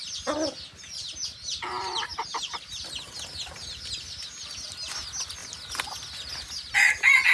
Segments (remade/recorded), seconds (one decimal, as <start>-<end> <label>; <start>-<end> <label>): 0.0-7.3 recorded